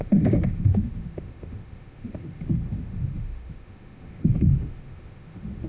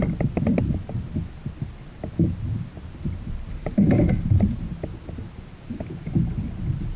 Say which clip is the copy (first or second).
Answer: first